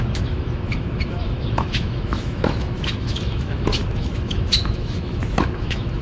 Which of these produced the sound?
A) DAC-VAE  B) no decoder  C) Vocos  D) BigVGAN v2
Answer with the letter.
A